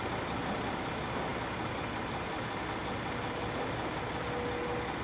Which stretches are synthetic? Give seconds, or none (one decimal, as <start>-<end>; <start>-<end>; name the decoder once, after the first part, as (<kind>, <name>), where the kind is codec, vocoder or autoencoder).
none